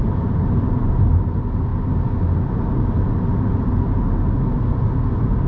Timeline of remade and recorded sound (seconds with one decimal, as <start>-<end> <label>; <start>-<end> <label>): 0.0-1.0 remade; 1.0-5.5 recorded